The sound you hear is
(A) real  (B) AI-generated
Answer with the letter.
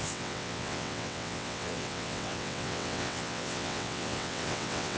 B